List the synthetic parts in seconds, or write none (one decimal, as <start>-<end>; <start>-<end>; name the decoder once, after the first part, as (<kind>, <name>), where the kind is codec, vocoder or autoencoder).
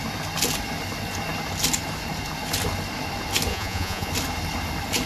3.5-4.1 (vocoder, Vocos)